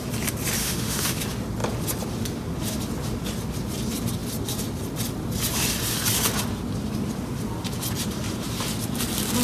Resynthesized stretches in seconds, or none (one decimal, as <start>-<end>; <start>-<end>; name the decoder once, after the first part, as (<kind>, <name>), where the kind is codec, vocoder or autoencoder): 0.6-1.2 (autoencoder, DAC-VAE)

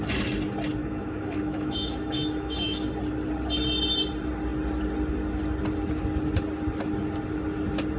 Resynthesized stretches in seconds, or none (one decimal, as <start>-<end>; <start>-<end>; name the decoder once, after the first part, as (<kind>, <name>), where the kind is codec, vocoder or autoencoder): 0.8-2.9 (autoencoder, DAC-VAE)

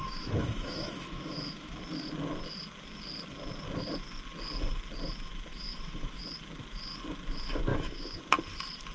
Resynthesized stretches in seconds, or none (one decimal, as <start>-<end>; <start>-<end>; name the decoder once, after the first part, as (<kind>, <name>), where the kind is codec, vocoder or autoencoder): 0.0-1.8 (autoencoder, DAC-VAE); 5.5-6.2; 7.7-8.2

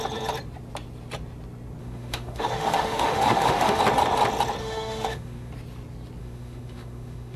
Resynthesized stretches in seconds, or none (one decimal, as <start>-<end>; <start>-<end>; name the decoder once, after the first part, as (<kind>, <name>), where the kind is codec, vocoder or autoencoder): 1.8-3.8 (autoencoder, DAC-VAE); 4.6-5.5; 6.2-7.4

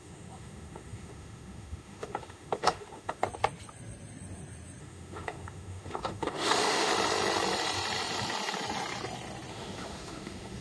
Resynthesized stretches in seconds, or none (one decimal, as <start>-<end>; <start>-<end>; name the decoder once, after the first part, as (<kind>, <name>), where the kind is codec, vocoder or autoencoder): 0.0-3.2 (autoencoder, DAC-VAE); 4.8-6.9; 9.5-10.6

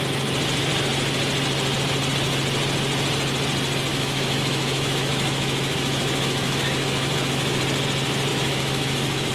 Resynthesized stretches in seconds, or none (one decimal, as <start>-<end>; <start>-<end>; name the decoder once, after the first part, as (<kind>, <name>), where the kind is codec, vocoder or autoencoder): 3.9-7.6 (autoencoder, DAC-VAE); 8.3-9.3

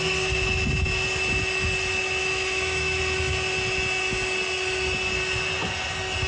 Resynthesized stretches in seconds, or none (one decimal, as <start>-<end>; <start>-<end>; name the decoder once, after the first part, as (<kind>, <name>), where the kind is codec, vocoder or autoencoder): 2.2-3.0 (autoencoder, DAC-VAE)

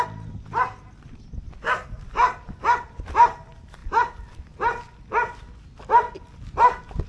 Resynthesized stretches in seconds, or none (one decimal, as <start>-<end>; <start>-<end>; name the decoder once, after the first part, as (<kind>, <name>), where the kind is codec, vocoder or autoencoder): none